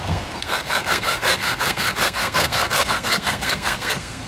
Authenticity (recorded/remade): remade